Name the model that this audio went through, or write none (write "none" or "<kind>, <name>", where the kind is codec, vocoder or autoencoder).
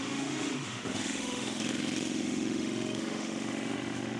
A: autoencoder, DAC-VAE